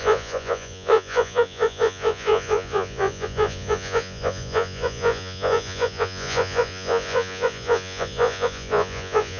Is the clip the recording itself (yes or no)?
no